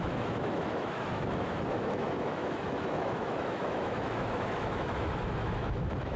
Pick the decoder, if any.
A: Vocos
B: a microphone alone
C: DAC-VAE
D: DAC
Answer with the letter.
C